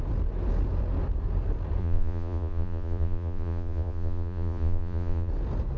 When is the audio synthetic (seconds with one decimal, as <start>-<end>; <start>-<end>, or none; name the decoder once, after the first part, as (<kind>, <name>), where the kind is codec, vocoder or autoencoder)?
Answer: 1.8-5.3 (vocoder, Vocos)